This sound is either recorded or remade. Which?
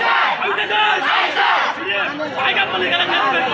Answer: recorded